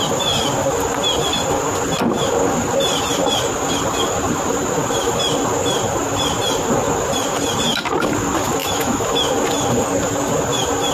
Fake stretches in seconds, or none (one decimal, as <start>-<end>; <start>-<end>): 8.6-9.2